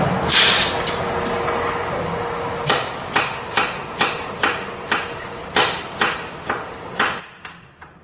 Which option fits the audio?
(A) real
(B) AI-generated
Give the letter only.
A